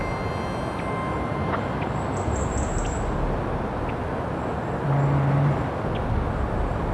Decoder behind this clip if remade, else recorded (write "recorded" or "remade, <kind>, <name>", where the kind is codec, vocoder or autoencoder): recorded